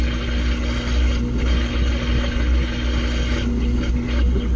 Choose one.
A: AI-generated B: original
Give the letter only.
B